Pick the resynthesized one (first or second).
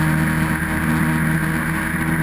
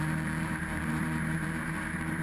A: second